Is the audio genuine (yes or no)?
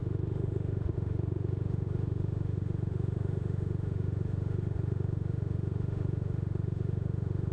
no